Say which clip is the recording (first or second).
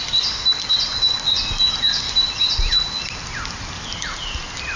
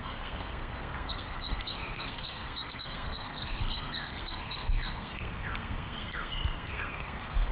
first